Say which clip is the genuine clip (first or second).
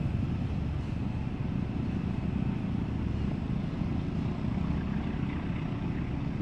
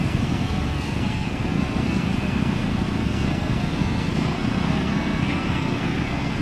first